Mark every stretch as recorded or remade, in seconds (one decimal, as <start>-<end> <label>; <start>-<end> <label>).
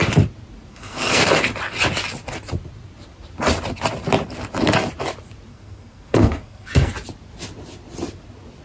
0.0-0.7 recorded; 0.7-1.3 remade; 1.3-5.5 recorded; 5.5-6.9 remade; 6.9-8.6 recorded